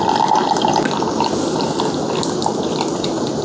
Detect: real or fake real